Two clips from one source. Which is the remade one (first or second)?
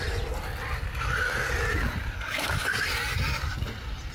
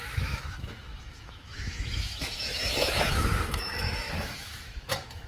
second